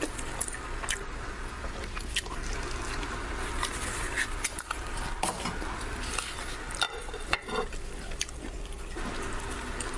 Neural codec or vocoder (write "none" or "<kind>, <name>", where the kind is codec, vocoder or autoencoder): none